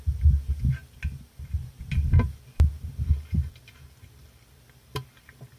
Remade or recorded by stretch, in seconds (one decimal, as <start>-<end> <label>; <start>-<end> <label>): 0.0-5.6 recorded